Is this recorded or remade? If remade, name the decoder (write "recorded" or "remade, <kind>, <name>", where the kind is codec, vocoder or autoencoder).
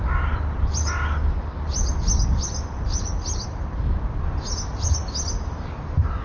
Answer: recorded